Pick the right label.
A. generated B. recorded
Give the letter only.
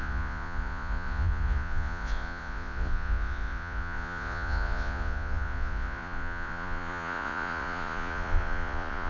A